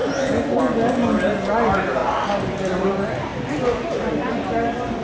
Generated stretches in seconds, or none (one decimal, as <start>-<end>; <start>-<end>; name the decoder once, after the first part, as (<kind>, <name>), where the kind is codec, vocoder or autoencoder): none

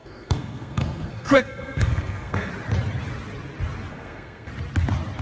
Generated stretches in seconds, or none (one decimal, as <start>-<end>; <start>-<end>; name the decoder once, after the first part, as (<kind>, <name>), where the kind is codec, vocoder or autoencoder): 0.0-2.5 (codec, SNAC); 3.9-4.5

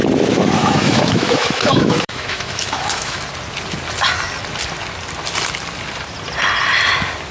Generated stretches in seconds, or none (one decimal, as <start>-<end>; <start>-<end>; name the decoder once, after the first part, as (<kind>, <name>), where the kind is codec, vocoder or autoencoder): 0.6-3.2 (autoencoder, DAC-VAE)

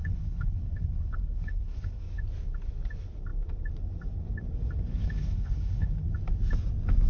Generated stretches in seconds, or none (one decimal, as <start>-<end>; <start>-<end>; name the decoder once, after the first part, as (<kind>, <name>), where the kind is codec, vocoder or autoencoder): 0.0-2.0 (codec, HILCodec); 4.9-5.9